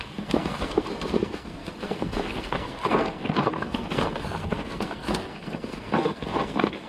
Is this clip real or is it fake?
fake